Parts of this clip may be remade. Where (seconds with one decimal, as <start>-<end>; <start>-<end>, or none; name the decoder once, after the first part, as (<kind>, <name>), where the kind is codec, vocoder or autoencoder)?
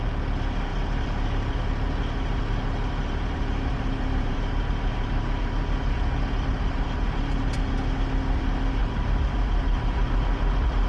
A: 0.7-5.4 (vocoder, BigVGAN v2); 6.5-7.4; 8.8-10.1